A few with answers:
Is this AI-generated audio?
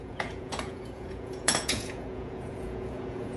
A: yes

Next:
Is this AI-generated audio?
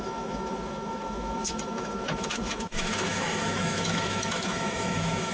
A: yes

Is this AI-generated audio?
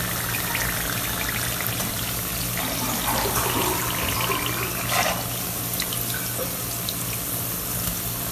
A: no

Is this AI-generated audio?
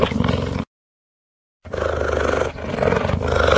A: no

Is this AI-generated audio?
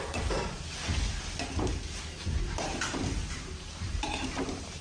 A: yes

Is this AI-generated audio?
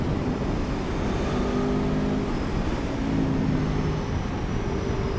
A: no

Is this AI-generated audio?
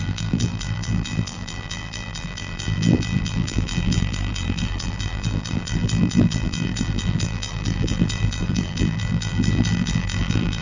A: yes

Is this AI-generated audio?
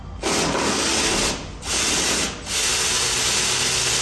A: no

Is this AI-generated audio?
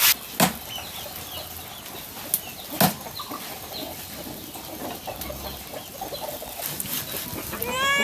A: no